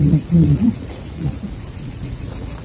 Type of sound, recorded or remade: remade